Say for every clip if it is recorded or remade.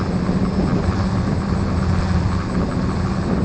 recorded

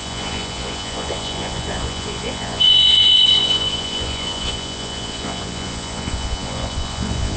remade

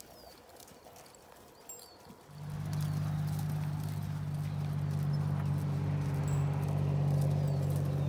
recorded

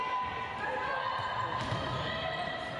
recorded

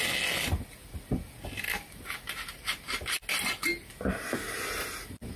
recorded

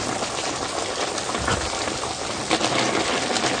recorded